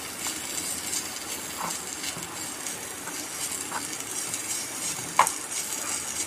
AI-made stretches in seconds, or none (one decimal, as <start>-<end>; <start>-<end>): 4.4-5.0